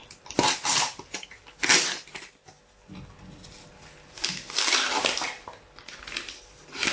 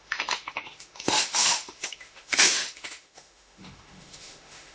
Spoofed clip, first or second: second